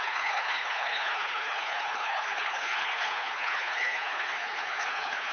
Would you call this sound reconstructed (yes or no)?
yes